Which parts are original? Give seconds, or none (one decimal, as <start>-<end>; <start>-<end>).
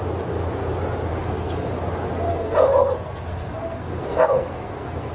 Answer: 0.0-1.1; 1.7-2.3